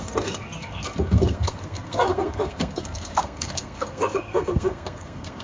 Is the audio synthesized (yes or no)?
yes